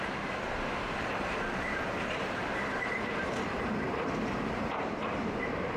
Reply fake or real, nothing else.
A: fake